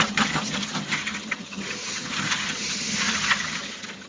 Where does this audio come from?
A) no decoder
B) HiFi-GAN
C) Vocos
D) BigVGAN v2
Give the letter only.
B